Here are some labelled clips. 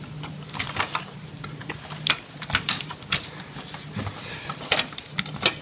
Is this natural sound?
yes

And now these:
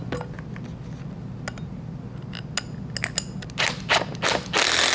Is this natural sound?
yes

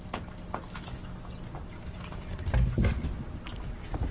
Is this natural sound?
yes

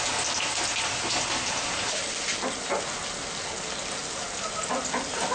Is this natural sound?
yes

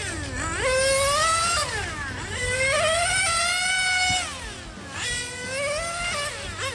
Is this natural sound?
yes